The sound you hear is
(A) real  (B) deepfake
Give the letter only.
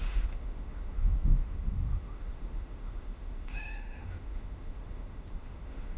B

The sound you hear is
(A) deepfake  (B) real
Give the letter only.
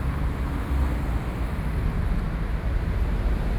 B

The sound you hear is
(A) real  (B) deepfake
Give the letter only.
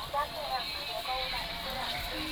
A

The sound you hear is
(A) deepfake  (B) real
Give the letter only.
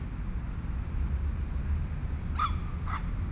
B